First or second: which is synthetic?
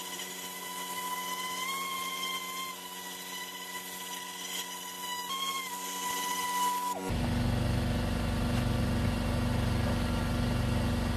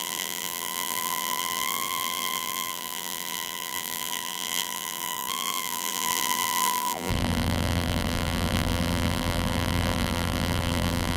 second